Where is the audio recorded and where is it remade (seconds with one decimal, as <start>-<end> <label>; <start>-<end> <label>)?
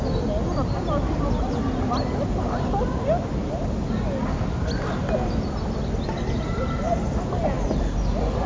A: 0.0-8.5 recorded